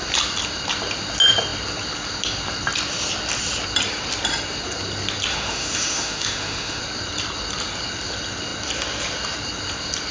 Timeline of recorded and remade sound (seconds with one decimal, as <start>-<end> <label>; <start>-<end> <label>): 0.0-5.3 recorded; 5.3-6.8 remade; 6.8-10.1 recorded